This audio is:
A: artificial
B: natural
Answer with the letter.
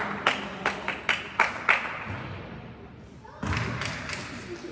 B